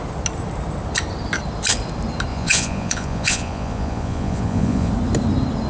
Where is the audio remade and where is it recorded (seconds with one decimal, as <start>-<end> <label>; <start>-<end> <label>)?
0.0-2.3 recorded; 2.3-4.9 remade; 4.9-5.7 recorded